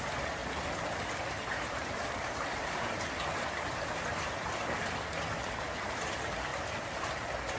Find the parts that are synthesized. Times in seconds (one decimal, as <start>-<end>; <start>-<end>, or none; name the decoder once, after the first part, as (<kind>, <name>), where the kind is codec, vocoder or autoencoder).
1.8-4.9 (vocoder, BigVGAN v2)